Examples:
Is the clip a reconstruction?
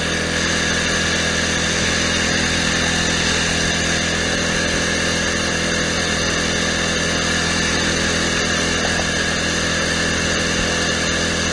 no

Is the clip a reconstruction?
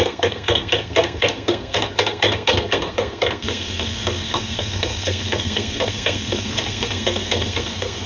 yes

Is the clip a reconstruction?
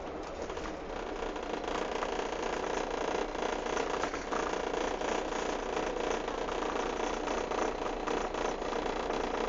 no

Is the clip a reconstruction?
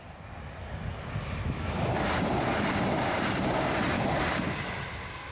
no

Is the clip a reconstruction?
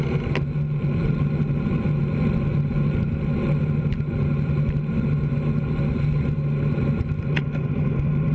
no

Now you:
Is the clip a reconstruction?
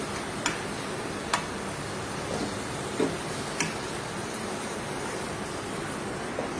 no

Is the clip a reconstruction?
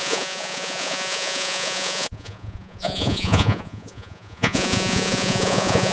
yes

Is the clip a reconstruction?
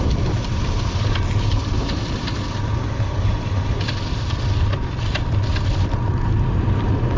no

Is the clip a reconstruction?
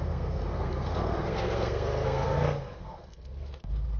yes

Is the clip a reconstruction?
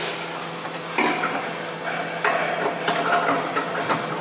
no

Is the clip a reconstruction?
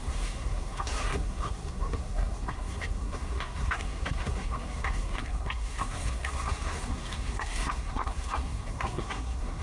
yes